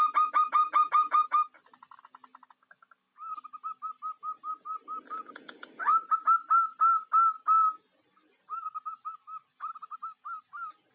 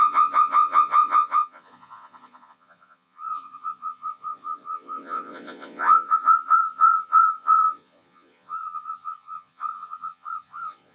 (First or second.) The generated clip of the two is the second